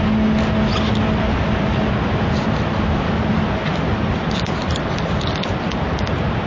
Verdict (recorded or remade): recorded